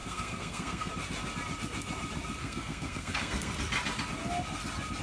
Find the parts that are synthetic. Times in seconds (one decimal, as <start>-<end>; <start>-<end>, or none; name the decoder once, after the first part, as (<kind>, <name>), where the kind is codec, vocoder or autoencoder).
0.0-0.9 (codec, SNAC); 2.4-3.5